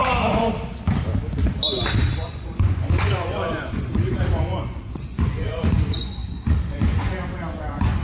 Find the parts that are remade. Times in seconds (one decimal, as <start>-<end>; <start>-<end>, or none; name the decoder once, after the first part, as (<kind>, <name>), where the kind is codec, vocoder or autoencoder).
2.2-8.0 (vocoder, Vocos)